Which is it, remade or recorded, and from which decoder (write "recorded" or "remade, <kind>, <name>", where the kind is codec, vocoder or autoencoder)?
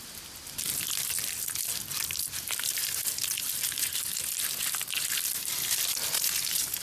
recorded